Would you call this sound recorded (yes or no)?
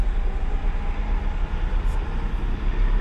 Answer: yes